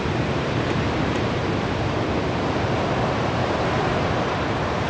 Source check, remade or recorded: remade